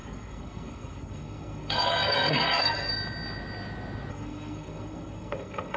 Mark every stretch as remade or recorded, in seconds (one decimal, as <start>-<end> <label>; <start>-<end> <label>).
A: 0.0-2.9 remade; 2.9-4.1 recorded; 4.1-5.8 remade